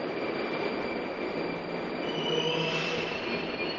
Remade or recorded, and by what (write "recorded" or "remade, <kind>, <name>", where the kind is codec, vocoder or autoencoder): recorded